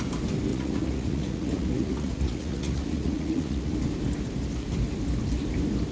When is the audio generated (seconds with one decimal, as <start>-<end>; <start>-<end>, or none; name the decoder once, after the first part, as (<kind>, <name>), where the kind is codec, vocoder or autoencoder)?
0.5-3.7 (vocoder, Vocos)